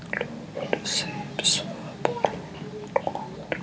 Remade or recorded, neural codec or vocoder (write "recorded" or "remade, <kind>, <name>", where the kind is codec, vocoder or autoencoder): recorded